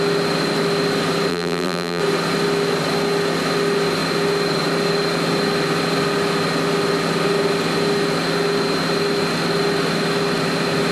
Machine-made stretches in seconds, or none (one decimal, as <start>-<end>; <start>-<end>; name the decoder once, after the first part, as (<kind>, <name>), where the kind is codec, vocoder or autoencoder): 1.3-2.0 (vocoder, BigVGAN v2)